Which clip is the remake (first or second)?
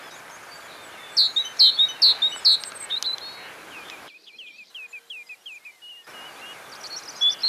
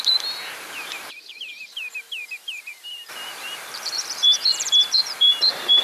second